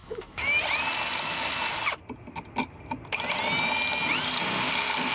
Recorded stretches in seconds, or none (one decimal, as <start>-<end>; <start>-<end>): 0.6-5.1